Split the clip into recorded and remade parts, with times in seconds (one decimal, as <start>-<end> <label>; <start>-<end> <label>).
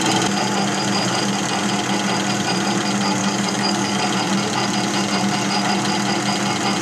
0.0-3.2 recorded; 3.2-4.0 remade; 4.0-6.8 recorded